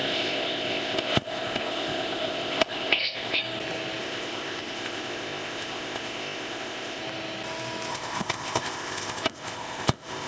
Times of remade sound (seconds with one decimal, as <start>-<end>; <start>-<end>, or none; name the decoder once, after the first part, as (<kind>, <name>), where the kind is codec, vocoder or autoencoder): 0.0-3.4 (codec, ZipCodec); 4.0-7.0; 7.9-10.3